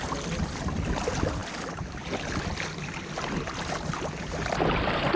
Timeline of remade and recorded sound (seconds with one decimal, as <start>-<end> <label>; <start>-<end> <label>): 0.0-5.2 recorded